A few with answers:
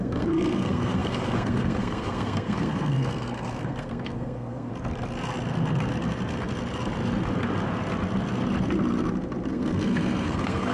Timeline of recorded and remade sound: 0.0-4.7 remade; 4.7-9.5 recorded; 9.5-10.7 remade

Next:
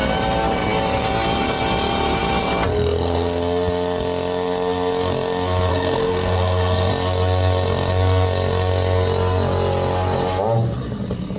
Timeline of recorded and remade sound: 0.0-2.7 recorded; 2.7-3.4 remade; 3.4-5.7 recorded; 5.7-6.9 remade; 6.9-11.4 recorded

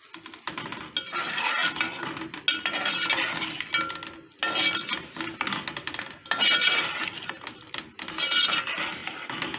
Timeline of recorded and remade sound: 0.0-9.6 recorded

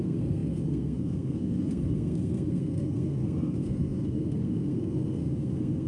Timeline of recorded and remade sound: 0.0-5.9 remade